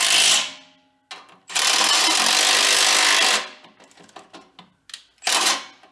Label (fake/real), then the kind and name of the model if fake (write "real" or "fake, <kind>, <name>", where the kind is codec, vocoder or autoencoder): real